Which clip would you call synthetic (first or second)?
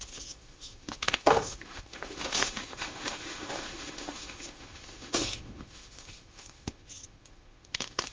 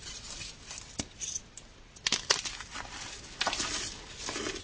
first